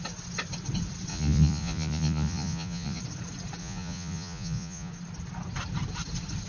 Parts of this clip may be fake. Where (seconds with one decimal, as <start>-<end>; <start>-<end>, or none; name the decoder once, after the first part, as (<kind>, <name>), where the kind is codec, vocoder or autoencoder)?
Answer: 1.1-3.0 (vocoder, Vocos); 3.6-4.9